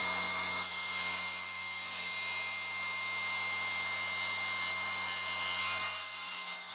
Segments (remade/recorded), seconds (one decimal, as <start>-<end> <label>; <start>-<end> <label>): 0.0-2.1 remade; 2.1-5.6 recorded; 5.6-6.7 remade